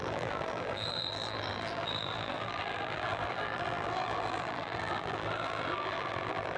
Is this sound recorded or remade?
remade